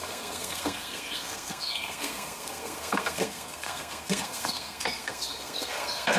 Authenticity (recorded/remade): remade